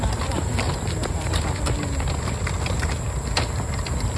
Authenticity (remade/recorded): recorded